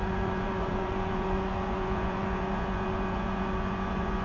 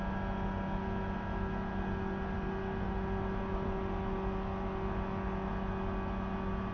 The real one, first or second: second